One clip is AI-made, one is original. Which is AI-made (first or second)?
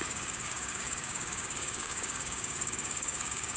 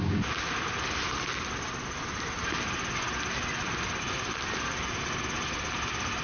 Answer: first